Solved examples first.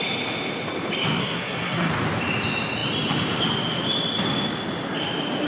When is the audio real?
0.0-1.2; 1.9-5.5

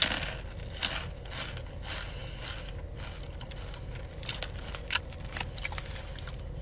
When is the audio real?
0.0-6.6